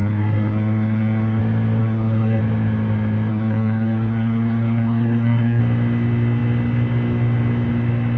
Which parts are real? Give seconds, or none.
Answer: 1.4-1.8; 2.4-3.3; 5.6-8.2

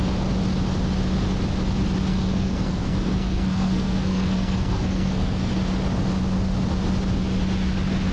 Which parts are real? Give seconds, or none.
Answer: 0.0-2.1; 5.5-8.1

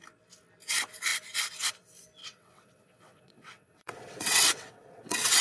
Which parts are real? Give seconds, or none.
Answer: 0.0-2.2

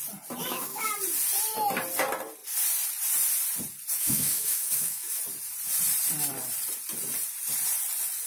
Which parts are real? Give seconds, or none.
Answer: 0.0-0.4; 0.9-4.0; 5.2-8.3

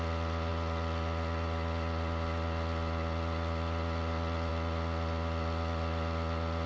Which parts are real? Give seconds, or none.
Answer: 0.0-6.7